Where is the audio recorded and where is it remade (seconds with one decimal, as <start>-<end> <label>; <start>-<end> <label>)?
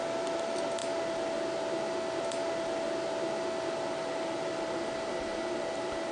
0.0-6.1 recorded